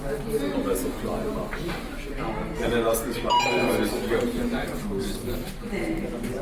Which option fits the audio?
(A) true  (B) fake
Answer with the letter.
A